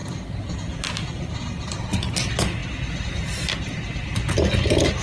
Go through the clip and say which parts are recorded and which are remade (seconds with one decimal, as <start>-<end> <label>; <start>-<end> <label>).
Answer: 0.0-5.0 recorded